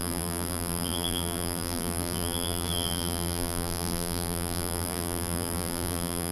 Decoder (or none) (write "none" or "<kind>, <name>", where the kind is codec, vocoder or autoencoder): vocoder, BigVGAN v2